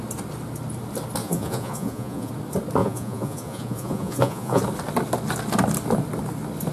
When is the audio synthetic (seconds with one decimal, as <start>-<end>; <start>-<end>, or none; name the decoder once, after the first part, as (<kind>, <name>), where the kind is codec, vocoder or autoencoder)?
1.2-2.3 (vocoder, Vocos); 2.8-4.6